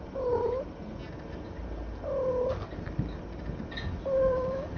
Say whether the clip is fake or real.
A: real